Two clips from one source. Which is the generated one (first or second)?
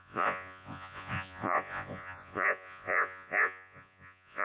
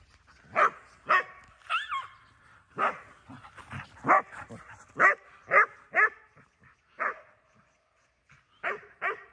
first